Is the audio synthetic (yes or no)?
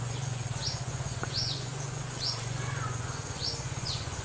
yes